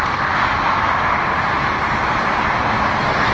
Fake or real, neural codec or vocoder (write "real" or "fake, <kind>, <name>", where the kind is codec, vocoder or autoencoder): real